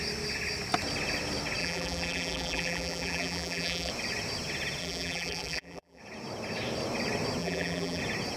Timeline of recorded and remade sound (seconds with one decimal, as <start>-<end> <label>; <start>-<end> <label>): 0.0-1.6 recorded; 1.6-3.9 remade; 3.9-4.8 recorded; 4.8-6.0 remade; 6.0-7.4 recorded; 7.4-8.0 remade; 8.0-8.4 recorded